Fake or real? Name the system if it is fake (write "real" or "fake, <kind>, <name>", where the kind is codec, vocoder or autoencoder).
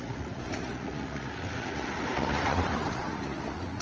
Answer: fake, vocoder, Vocos